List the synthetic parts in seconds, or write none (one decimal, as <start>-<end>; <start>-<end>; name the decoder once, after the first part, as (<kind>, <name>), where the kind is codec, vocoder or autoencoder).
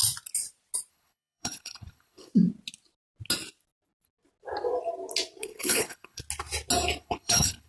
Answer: 0.9-2.3 (codec, HILCodec); 5.4-6.2; 7.0-7.7